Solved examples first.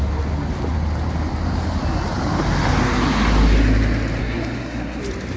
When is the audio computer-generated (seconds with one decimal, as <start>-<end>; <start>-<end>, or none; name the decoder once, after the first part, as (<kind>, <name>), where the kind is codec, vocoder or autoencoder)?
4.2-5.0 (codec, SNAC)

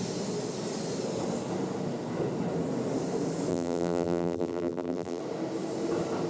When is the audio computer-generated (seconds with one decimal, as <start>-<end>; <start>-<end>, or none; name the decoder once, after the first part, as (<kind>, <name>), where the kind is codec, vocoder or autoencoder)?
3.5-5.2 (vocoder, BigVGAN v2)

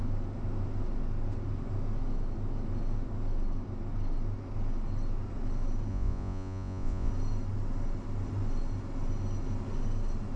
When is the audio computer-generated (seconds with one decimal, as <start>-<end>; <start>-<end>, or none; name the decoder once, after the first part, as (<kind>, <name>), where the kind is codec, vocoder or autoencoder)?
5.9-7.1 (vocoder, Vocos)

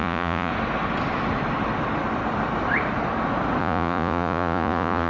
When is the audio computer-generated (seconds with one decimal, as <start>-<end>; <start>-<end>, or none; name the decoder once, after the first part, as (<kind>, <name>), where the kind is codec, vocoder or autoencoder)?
0.0-0.5 (vocoder, Vocos); 3.6-5.1

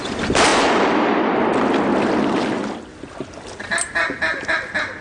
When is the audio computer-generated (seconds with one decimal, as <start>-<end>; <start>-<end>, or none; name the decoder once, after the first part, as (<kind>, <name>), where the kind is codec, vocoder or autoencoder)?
0.5-1.6 (vocoder, BigVGAN v2)